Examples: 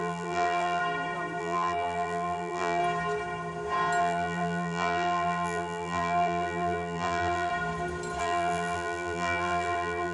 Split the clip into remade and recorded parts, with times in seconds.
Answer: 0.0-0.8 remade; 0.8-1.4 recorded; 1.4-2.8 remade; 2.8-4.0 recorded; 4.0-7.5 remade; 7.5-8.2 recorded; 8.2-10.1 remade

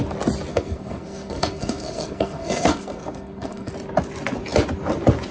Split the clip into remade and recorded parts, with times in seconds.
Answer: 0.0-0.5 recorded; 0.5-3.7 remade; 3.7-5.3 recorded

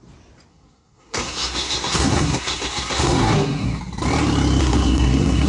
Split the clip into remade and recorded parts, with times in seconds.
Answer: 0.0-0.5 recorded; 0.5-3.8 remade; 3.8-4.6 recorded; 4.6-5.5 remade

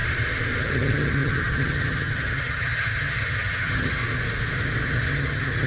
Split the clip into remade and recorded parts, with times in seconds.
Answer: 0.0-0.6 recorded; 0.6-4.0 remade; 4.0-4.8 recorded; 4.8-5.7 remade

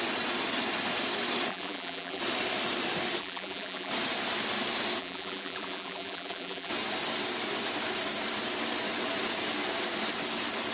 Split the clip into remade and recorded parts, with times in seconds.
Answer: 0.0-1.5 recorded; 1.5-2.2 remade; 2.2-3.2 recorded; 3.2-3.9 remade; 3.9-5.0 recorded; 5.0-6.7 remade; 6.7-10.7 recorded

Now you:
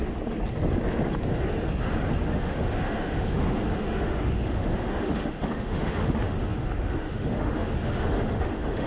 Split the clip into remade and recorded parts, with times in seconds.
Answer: 0.0-2.2 recorded; 2.2-8.9 remade

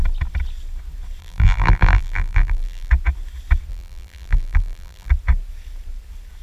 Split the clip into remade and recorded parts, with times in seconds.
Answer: 0.0-1.2 recorded; 1.2-2.9 remade; 2.9-3.7 recorded; 3.7-5.1 remade; 5.1-6.4 recorded